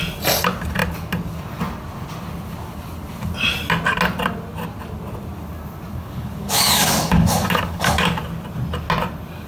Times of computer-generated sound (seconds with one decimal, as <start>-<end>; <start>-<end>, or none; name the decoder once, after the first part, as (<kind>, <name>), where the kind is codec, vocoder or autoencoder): 6.0-8.2 (codec, DAC)